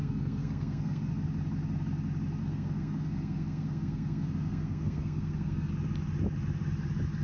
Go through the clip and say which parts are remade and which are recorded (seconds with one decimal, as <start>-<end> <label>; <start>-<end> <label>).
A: 0.0-1.1 remade; 1.1-2.4 recorded; 2.4-5.7 remade; 5.7-7.2 recorded